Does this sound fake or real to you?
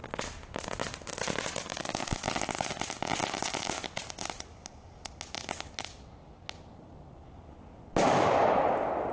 real